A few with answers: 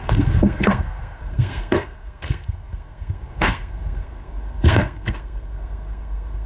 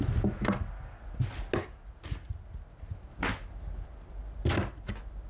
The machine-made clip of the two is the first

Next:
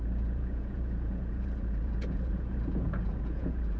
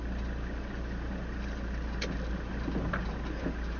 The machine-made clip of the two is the first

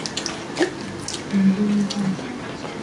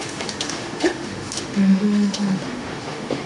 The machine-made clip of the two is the second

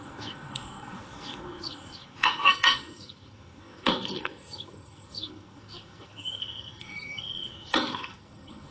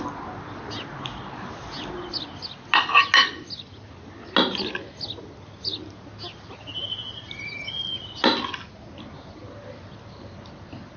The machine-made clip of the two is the first